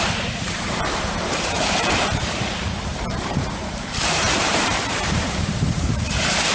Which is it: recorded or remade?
remade